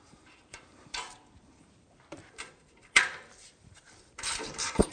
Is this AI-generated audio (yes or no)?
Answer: yes